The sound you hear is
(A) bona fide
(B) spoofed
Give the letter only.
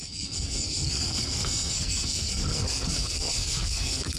B